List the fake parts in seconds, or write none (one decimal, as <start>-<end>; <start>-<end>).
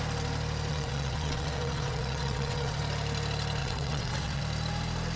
0.7-2.8; 3.6-4.4